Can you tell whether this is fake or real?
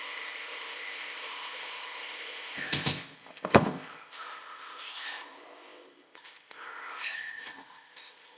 fake